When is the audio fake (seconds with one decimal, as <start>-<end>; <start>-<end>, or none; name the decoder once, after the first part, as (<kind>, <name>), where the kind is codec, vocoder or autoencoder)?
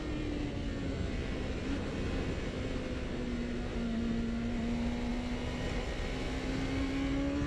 none